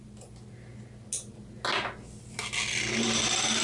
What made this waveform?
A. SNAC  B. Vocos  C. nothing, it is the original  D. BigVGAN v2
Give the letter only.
C